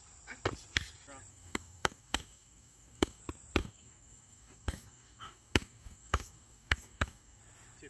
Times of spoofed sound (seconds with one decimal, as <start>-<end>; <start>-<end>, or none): 1.3-3.2; 3.6-7.4